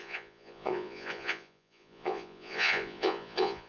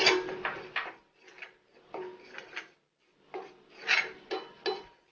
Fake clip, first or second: first